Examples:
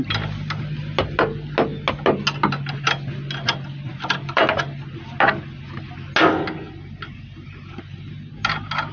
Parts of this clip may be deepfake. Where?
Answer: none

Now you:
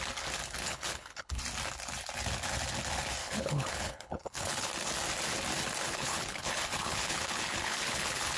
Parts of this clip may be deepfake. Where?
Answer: 0.6-1.4 (codec, HILCodec); 3.2-4.7; 5.8-8.4

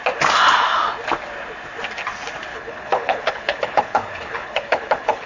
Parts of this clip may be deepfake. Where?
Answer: 2.5-5.3 (codec, HILCodec)

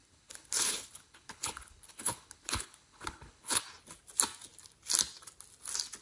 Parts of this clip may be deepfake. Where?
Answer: 0.0-3.6 (codec, HILCodec)

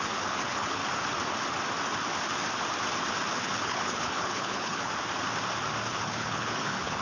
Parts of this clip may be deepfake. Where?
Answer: 0.0-0.8 (codec, HILCodec); 3.3-4.9; 5.9-7.0

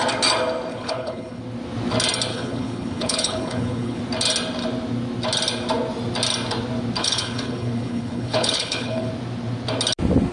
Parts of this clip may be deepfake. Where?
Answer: 0.7-1.4 (codec, HILCodec); 2.3-4.0; 7.0-9.1